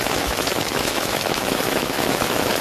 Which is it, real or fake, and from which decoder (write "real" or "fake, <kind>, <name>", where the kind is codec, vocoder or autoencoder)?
fake, autoencoder, DAC-VAE